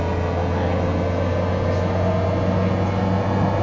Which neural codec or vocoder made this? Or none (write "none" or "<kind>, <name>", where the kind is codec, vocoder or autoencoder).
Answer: none